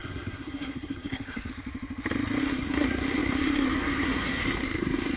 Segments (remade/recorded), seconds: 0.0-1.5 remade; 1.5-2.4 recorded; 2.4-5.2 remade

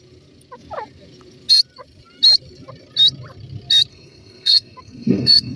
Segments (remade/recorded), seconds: 0.0-3.9 recorded; 3.9-5.6 remade

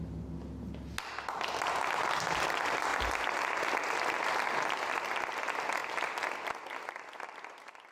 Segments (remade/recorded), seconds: 0.0-7.9 recorded

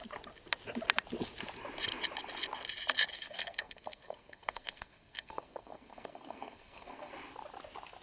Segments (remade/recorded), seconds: 0.0-3.1 recorded; 3.1-7.1 remade; 7.1-8.0 recorded